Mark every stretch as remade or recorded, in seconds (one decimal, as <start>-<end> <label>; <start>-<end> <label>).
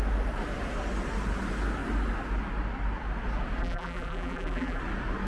0.0-3.6 recorded; 3.6-4.8 remade; 4.8-5.3 recorded